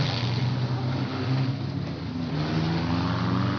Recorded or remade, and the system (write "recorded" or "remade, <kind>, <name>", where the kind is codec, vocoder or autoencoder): recorded